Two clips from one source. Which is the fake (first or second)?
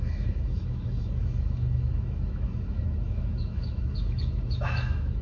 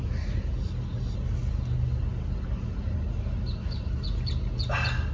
first